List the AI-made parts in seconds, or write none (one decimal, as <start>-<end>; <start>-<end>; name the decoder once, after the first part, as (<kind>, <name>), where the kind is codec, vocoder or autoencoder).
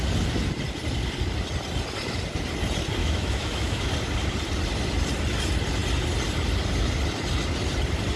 3.0-3.9 (autoencoder, DAC-VAE)